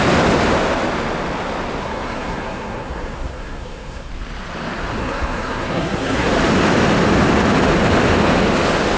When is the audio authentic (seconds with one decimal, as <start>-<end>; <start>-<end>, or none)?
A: 0.0-1.8; 4.1-5.0; 6.3-9.0